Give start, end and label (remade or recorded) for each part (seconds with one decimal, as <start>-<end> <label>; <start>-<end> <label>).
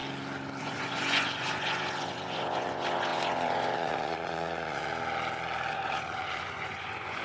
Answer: 0.0-0.6 recorded; 0.6-4.9 remade; 4.9-5.7 recorded; 5.7-7.2 remade